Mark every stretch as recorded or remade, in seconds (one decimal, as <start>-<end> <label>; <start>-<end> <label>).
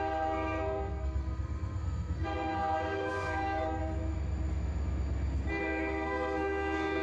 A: 0.0-3.8 remade; 3.8-5.5 recorded; 5.5-7.0 remade